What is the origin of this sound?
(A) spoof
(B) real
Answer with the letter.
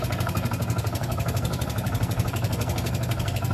A